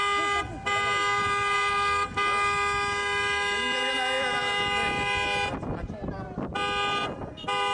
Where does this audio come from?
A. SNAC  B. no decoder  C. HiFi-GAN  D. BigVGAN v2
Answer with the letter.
B